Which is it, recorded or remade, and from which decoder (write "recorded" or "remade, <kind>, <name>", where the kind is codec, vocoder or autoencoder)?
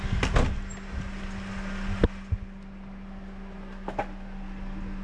recorded